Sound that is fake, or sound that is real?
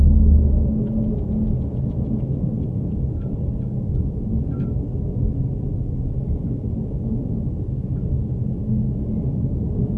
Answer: real